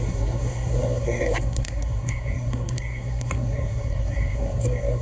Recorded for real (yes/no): no